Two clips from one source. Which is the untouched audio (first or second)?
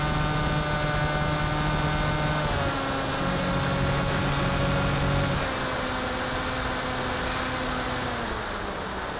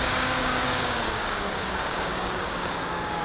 first